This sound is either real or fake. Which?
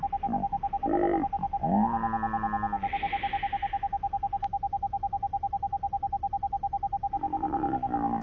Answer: real